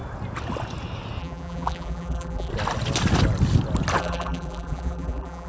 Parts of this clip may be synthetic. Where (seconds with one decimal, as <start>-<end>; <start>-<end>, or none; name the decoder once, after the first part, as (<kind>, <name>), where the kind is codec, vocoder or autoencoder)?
1.2-2.5 (vocoder, BigVGAN v2); 4.0-5.5